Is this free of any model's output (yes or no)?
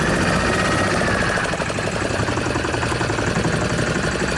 yes